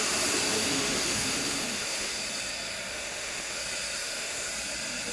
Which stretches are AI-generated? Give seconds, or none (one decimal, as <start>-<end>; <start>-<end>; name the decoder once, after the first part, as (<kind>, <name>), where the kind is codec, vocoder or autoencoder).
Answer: 0.7-2.2 (autoencoder, DAC-VAE); 2.9-3.6; 4.0-4.5